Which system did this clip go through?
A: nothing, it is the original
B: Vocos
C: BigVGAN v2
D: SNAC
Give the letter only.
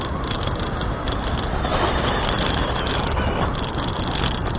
A